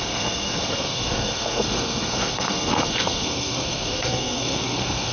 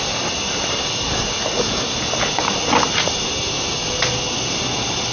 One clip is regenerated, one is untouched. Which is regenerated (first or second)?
first